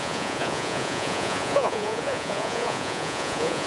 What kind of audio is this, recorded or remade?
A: remade